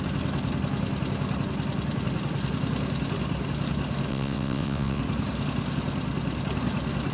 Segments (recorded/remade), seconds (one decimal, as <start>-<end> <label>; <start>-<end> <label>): 0.0-4.1 recorded; 4.1-5.0 remade; 5.0-7.1 recorded